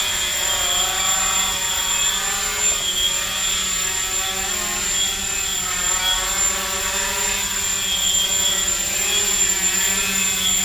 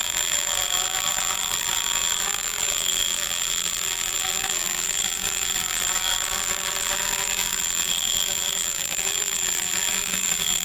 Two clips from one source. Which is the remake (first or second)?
second